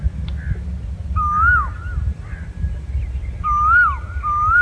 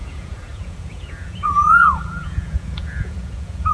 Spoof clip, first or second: second